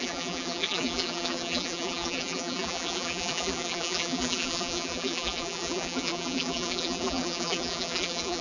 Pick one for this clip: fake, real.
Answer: fake